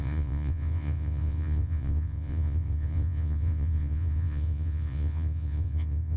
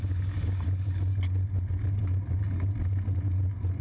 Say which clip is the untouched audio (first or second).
second